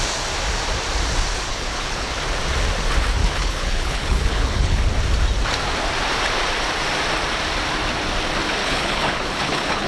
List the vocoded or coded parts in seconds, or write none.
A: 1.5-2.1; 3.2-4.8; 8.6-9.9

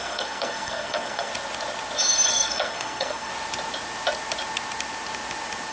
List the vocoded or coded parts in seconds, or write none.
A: 0.0-1.3; 2.3-3.3